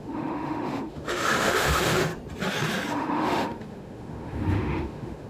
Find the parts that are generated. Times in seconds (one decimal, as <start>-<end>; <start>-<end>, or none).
0.0-2.1; 2.9-5.3